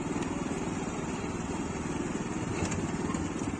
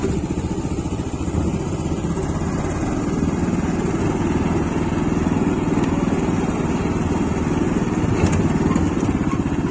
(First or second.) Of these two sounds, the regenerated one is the first